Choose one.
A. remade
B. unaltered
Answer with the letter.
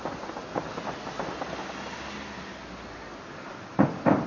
B